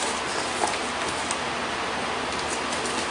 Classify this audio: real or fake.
real